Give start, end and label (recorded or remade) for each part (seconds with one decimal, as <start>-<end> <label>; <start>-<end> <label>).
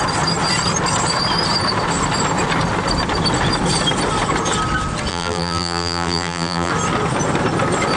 0.0-5.1 recorded; 5.1-6.7 remade; 6.7-8.0 recorded